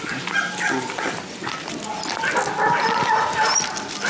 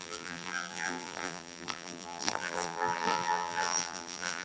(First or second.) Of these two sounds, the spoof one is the second